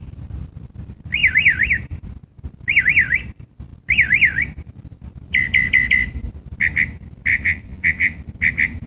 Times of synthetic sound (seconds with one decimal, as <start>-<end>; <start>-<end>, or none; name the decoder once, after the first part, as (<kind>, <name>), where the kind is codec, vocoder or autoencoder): 7.3-8.2 (vocoder, Vocos)